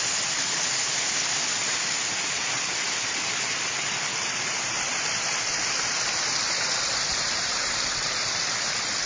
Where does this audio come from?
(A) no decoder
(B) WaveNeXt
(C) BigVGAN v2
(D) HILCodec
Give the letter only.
C